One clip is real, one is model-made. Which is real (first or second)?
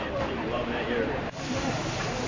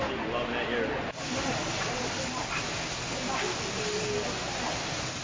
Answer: second